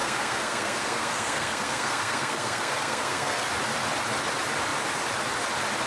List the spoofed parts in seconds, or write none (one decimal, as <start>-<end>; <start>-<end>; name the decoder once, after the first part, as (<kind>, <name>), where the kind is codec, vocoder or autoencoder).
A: 0.0-3.5 (codec, SNAC)